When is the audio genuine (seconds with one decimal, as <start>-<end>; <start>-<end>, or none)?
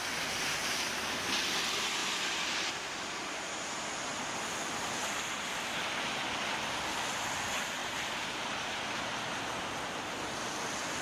0.0-2.0; 2.7-7.8; 9.4-11.0